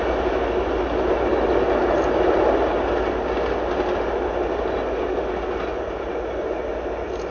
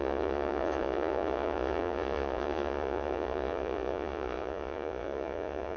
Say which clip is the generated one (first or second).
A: second